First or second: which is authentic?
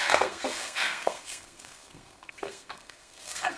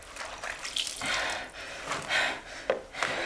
second